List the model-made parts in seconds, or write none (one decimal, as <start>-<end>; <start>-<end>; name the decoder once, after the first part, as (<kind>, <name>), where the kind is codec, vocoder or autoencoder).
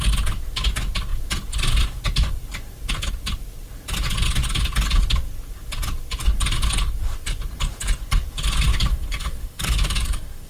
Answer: 8.7-10.5 (codec, DAC)